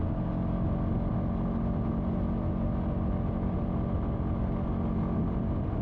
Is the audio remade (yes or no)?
no